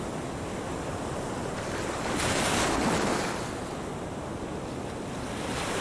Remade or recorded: recorded